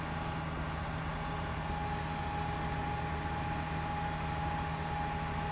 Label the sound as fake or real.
real